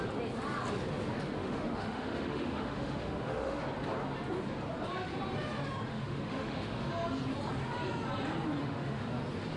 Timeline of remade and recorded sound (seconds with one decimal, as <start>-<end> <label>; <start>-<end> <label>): 0.0-1.4 recorded; 1.4-3.6 remade; 3.6-5.9 recorded; 5.9-6.9 remade; 6.9-8.6 recorded; 8.6-9.1 remade; 9.1-9.6 recorded